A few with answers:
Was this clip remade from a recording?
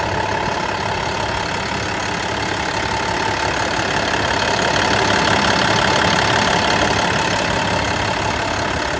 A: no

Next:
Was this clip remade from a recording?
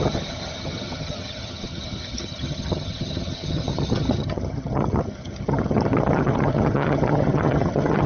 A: yes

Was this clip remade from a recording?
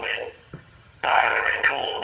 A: yes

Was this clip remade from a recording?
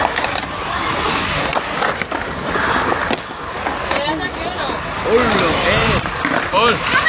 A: no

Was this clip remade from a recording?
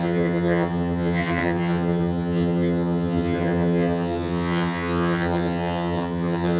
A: yes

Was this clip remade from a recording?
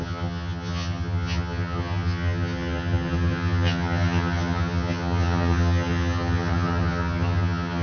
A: yes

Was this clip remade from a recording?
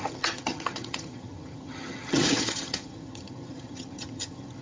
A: yes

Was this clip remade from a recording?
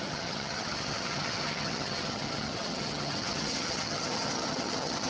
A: yes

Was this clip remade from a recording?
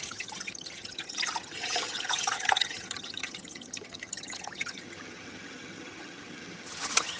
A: yes